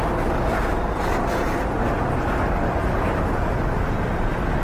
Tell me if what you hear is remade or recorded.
recorded